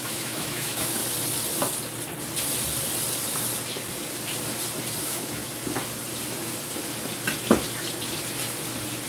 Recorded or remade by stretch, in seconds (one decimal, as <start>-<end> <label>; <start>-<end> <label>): 0.0-1.0 remade; 1.0-5.0 recorded; 5.0-5.4 remade; 5.4-9.1 recorded